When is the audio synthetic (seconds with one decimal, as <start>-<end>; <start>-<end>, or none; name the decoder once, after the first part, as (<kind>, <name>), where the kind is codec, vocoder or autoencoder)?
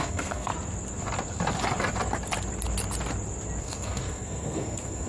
0.0-0.5 (codec, SNAC); 3.6-5.1